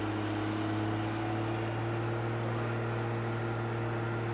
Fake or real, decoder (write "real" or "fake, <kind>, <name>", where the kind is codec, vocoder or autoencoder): real